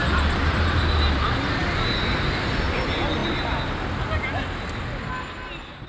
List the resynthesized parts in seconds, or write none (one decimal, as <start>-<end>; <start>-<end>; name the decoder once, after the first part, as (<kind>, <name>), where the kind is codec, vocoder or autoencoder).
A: none